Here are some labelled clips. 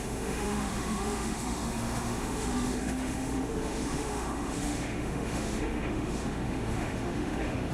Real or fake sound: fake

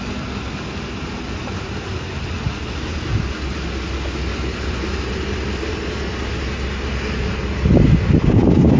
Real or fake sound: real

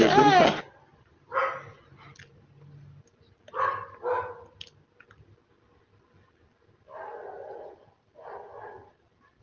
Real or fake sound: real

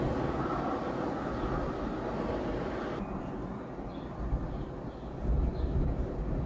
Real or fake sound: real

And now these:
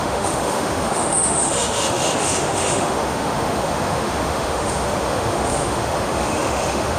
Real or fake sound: fake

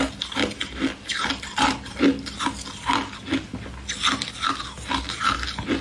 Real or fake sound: real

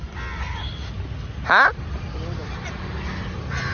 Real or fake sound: real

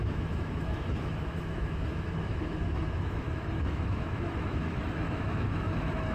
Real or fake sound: fake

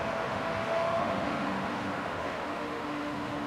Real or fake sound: fake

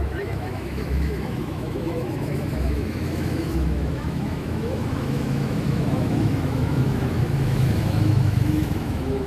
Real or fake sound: fake